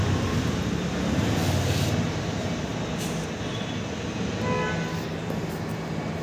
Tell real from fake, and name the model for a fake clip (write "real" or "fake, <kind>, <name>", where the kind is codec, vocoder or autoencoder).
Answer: real